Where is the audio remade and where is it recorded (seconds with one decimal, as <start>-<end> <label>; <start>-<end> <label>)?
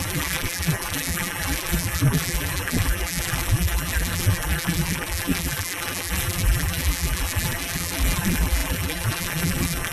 0.0-9.9 remade